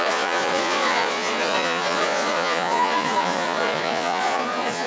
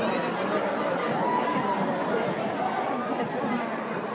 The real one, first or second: second